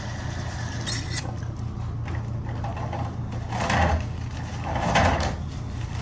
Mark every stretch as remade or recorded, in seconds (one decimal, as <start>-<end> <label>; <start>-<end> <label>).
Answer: 0.0-6.0 recorded